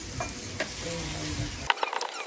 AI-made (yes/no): no